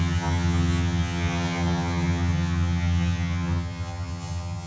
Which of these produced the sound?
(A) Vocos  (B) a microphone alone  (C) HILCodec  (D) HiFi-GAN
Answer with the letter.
D